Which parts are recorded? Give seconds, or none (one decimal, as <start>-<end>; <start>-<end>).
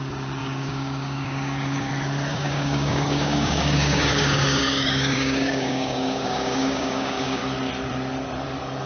0.0-0.4; 1.9-2.3; 7.4-8.9